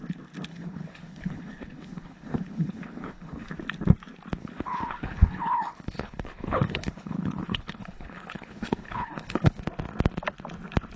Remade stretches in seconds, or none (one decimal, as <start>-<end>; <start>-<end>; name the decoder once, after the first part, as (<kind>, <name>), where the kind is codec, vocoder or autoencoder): 0.5-3.5 (codec, HILCodec); 4.4-9.6